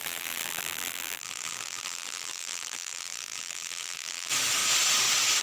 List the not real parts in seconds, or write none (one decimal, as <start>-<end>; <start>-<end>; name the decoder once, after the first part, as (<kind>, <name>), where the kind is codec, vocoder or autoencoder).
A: 0.0-4.3 (vocoder, BigVGAN v2)